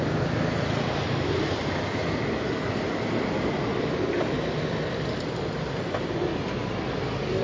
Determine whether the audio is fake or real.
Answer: fake